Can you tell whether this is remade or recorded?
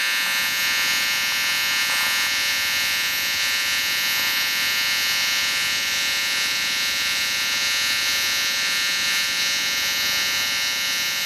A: remade